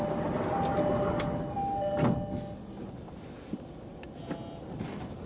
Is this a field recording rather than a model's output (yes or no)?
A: yes